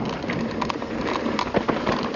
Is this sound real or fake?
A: real